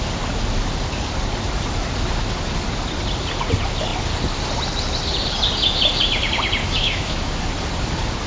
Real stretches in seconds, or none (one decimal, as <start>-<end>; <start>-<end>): 0.0-6.6; 7.4-8.3

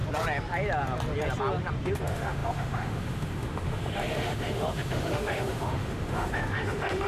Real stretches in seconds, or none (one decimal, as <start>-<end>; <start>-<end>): 0.0-2.0

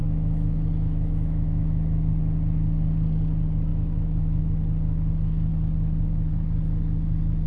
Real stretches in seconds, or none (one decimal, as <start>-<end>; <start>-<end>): 2.1-3.7; 4.4-7.5